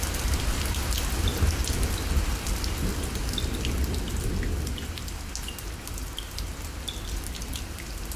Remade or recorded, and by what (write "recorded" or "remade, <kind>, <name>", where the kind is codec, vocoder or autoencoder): recorded